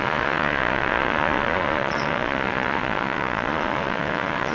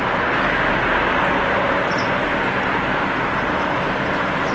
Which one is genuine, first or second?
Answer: second